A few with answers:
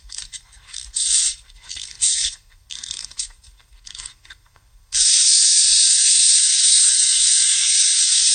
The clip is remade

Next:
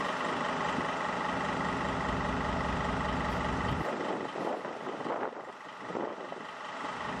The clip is recorded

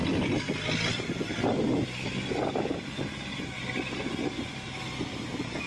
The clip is recorded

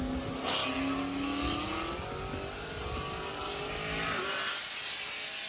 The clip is recorded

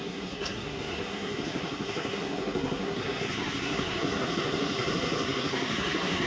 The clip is remade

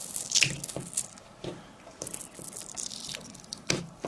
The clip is recorded